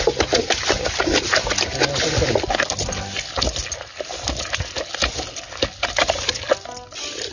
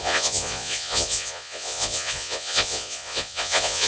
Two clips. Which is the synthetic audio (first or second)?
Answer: second